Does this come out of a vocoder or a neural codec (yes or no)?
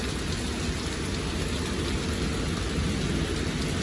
no